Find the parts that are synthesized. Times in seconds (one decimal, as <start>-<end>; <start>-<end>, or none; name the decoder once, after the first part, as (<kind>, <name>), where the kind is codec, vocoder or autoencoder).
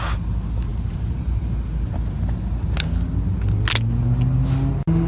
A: 0.7-1.5 (vocoder, BigVGAN v2)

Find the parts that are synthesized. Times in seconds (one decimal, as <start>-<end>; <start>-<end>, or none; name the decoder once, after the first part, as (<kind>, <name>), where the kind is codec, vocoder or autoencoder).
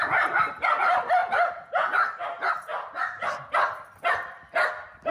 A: none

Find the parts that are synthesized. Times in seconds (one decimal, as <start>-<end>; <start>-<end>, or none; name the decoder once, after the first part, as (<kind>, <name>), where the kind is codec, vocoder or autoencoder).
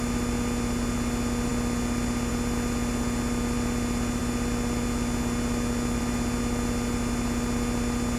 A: none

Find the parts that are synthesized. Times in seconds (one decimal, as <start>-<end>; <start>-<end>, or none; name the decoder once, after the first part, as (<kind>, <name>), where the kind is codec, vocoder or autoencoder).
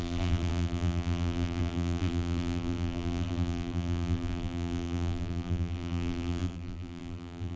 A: 0.0-7.6 (vocoder, BigVGAN v2)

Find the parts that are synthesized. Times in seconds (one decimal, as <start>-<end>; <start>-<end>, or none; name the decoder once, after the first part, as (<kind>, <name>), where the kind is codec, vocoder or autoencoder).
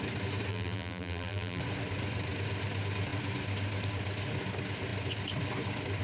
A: 0.5-1.6 (vocoder, BigVGAN v2)